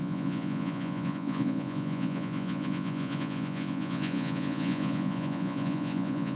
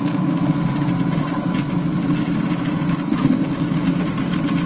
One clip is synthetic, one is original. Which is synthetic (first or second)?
first